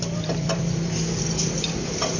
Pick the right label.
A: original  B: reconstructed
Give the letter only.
A